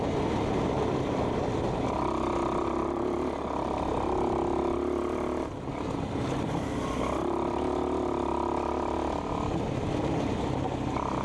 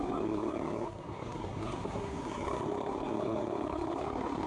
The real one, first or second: first